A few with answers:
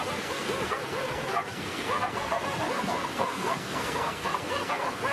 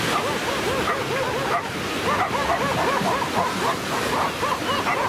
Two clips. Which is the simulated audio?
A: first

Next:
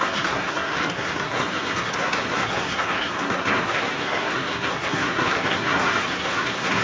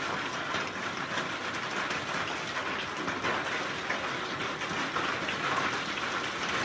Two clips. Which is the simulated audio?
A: first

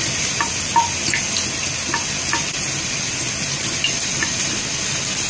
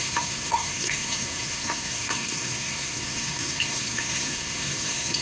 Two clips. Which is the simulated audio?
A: second